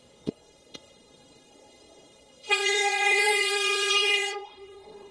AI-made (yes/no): yes